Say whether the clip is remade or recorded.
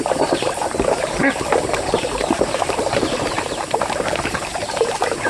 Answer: remade